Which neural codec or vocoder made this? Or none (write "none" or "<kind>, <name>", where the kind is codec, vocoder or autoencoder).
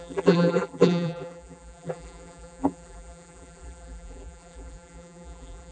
vocoder, BigVGAN v2